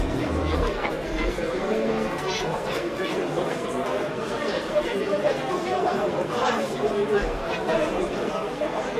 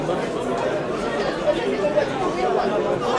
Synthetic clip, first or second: first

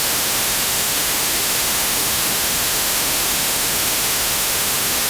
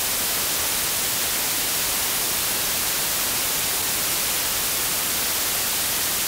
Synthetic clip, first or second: first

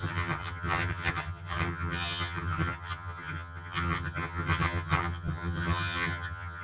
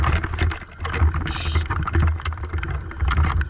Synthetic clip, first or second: first